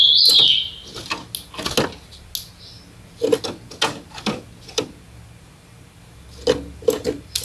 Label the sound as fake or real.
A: real